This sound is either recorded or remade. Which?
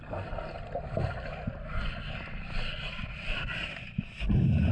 recorded